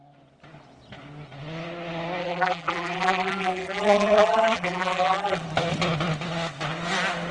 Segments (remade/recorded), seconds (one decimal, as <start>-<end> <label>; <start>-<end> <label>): 0.0-2.2 recorded; 2.2-5.4 remade; 5.4-7.3 recorded